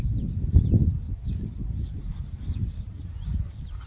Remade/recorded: recorded